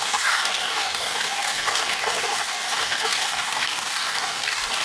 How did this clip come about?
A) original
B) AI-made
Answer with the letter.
B